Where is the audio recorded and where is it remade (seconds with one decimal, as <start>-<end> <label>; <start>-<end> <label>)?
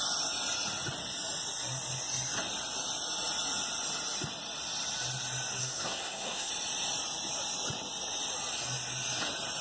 0.0-5.6 recorded; 5.6-6.5 remade; 6.5-9.6 recorded